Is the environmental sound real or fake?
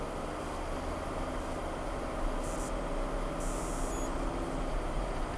real